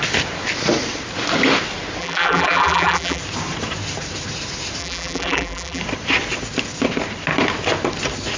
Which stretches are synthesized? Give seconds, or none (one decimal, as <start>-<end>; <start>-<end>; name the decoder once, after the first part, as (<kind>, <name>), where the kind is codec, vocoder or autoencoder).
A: 2.0-3.2 (vocoder, BigVGAN v2); 4.8-5.8